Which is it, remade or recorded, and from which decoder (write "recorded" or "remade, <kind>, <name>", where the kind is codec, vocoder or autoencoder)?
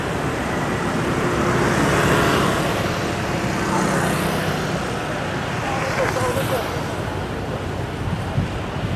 recorded